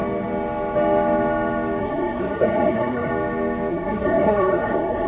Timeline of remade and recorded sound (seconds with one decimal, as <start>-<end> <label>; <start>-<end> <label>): 0.0-1.8 recorded; 1.8-3.1 remade; 3.1-3.7 recorded; 3.7-5.1 remade